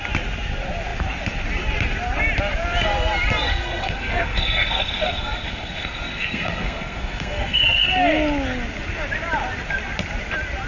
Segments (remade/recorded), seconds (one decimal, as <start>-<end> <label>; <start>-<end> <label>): 0.0-3.5 recorded; 3.5-7.9 remade; 7.9-10.7 recorded